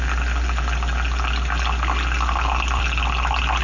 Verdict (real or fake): real